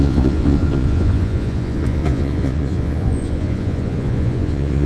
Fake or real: fake